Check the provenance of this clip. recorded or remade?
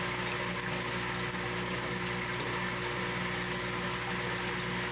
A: recorded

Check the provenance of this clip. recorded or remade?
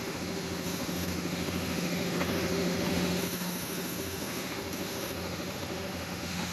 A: remade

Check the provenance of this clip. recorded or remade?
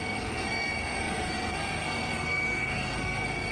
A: remade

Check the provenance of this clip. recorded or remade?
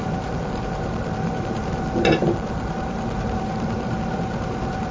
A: remade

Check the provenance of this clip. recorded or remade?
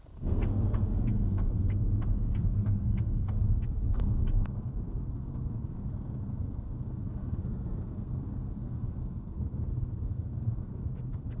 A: remade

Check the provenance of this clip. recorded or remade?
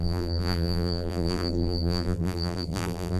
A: remade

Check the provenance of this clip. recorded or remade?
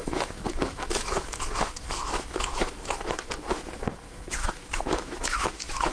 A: remade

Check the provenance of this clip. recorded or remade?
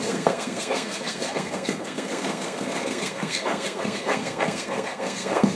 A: remade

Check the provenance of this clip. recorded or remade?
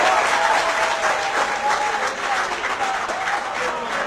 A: recorded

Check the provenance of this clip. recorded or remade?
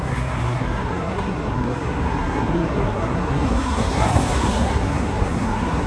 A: remade